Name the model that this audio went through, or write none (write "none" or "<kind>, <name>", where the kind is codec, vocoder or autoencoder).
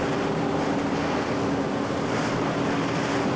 none